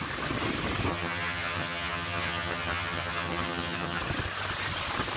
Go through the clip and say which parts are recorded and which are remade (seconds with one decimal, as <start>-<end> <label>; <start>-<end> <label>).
0.0-0.9 recorded; 0.9-4.0 remade; 4.0-5.2 recorded